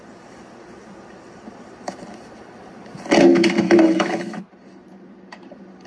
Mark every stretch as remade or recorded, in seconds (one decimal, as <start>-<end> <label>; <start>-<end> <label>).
0.0-3.3 recorded; 3.3-4.5 remade; 4.5-5.9 recorded